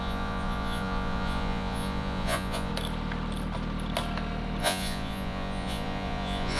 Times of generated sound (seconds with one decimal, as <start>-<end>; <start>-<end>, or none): 0.0-2.7; 4.6-6.6